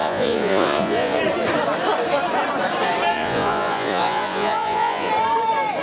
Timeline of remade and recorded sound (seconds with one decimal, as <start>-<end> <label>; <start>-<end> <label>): 0.0-1.2 remade; 1.2-3.1 recorded; 3.1-5.1 remade; 5.1-5.8 recorded